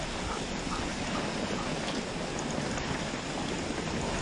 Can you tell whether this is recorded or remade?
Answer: recorded